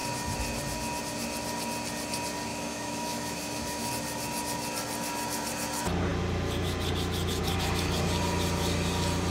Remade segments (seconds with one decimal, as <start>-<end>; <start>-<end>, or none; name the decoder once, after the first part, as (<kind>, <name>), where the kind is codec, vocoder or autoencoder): 2.5-3.9 (autoencoder, DAC-VAE)